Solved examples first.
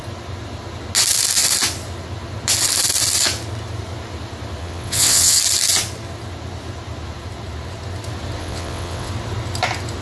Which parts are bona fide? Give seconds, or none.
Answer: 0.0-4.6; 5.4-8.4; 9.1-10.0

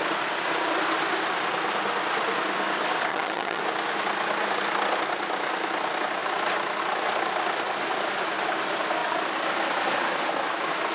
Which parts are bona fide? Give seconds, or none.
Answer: 0.0-3.1; 3.6-10.9

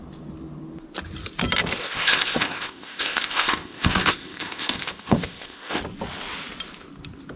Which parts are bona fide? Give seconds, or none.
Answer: 0.0-1.8; 5.8-7.4